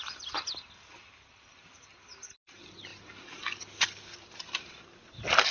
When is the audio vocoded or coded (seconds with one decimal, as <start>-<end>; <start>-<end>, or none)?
0.0-2.9; 4.8-5.5